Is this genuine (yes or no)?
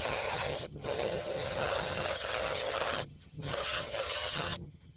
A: no